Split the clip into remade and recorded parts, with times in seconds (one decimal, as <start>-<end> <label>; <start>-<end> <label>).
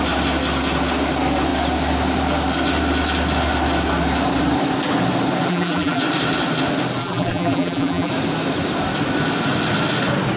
0.0-5.5 recorded; 5.5-6.0 remade; 6.0-7.0 recorded; 7.0-8.1 remade; 8.1-10.4 recorded